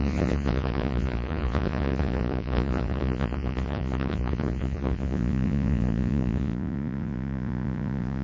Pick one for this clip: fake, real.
fake